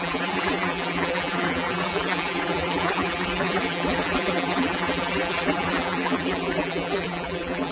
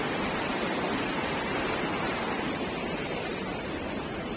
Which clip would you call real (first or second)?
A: second